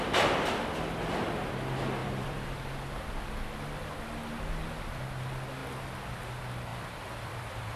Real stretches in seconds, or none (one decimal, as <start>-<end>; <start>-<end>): 0.0-2.0; 2.7-6.7